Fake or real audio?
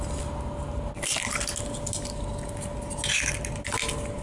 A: real